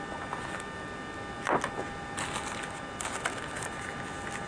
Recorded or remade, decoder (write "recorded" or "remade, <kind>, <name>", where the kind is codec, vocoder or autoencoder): recorded